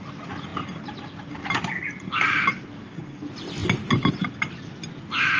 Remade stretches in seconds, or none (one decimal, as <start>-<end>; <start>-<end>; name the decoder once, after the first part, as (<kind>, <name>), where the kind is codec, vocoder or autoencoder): none